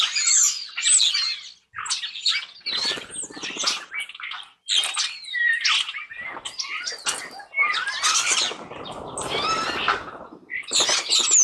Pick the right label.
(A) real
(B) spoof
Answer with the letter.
A